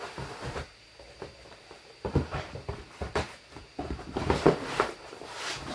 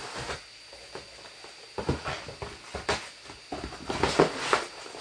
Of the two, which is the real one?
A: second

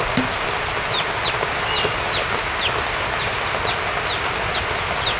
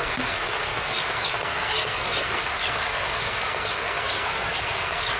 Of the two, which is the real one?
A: first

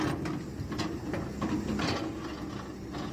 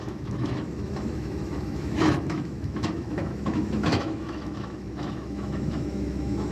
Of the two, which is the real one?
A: first